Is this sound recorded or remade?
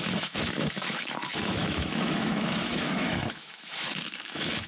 remade